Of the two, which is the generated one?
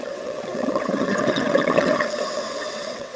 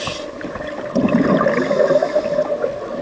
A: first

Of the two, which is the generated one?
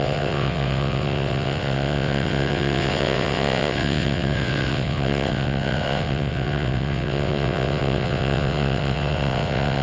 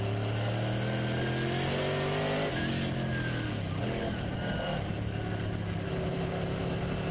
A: first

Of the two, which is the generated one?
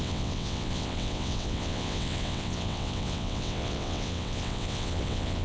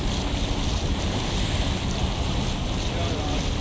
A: first